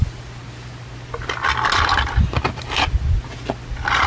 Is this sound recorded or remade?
recorded